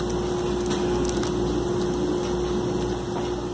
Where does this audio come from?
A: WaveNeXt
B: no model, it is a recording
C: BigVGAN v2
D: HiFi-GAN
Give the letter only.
B